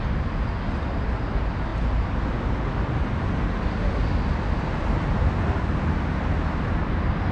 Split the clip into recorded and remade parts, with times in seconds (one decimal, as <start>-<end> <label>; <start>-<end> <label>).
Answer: 0.0-7.3 recorded